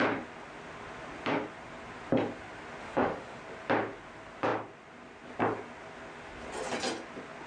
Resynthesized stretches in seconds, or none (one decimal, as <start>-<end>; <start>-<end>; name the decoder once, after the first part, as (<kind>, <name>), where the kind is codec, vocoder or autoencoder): 2.8-3.4 (autoencoder, DAC-VAE)